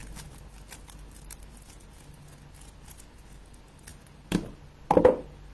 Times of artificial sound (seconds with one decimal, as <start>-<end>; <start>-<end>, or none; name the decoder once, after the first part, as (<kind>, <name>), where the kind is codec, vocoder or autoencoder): none